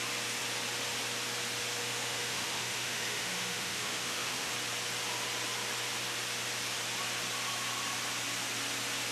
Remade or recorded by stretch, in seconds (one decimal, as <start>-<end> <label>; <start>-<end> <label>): 0.0-1.8 recorded; 1.8-4.5 remade; 4.5-9.1 recorded